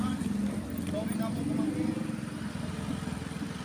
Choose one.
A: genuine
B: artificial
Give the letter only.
A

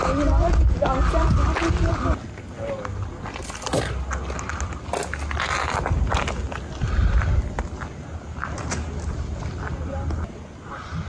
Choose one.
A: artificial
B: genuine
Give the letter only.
B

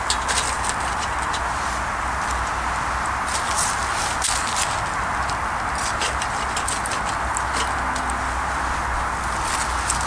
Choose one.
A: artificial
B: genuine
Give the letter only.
B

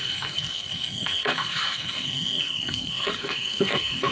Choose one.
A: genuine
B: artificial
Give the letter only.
B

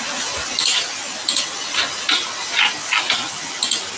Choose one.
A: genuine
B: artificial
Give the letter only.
A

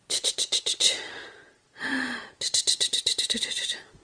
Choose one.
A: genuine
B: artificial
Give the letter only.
A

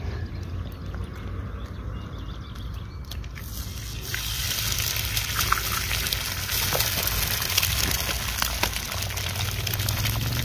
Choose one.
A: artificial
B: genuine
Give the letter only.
B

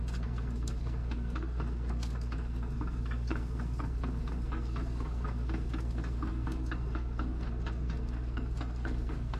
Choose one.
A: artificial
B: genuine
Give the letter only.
A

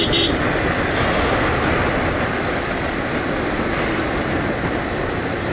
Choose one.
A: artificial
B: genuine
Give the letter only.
B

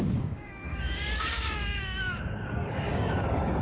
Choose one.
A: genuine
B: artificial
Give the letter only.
B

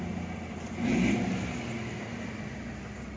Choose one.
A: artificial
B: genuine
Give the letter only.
B